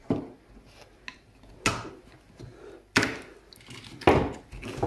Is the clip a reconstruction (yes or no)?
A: no